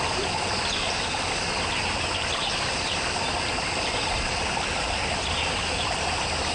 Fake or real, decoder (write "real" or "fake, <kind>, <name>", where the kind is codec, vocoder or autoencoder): real